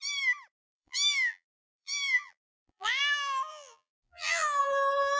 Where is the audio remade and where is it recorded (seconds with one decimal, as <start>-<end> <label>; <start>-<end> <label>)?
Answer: 0.0-0.6 recorded; 0.6-3.0 remade; 3.0-3.5 recorded; 3.5-4.6 remade; 4.6-5.2 recorded